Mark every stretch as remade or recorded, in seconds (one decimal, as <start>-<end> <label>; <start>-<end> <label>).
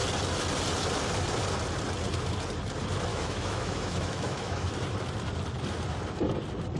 0.0-3.1 recorded; 3.1-4.7 remade; 4.7-6.8 recorded